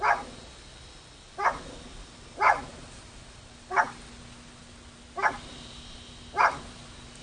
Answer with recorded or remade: recorded